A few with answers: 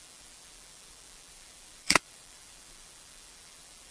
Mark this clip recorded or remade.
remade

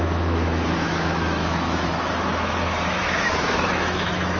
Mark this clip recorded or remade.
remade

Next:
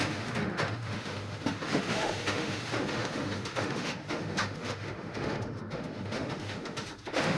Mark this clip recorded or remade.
remade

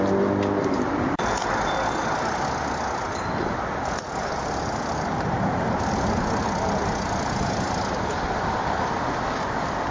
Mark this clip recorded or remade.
recorded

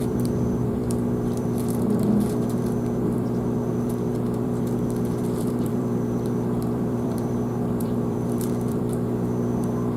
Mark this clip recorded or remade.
remade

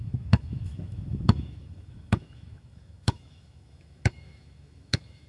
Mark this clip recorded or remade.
remade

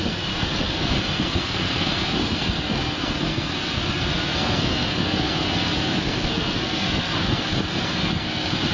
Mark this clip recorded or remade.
remade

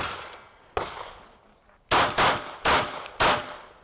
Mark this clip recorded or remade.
recorded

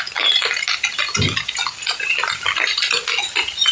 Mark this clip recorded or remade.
recorded